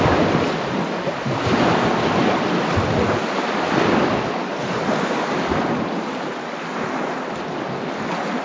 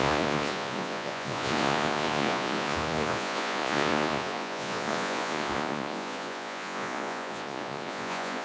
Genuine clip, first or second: first